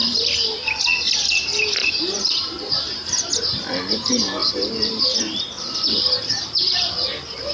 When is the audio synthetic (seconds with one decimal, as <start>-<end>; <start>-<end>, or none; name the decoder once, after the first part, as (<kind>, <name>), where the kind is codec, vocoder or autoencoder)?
1.8-3.3 (vocoder, BigVGAN v2); 4.4-5.2